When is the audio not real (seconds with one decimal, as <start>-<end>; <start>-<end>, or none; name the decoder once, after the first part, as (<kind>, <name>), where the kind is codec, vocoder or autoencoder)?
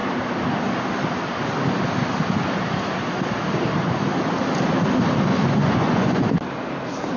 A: 5.3-6.2 (vocoder, Vocos)